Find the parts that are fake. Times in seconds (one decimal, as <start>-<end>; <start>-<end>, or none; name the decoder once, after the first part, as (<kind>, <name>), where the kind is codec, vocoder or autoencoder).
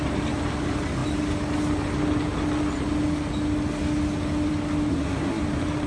4.9-5.4 (codec, SNAC)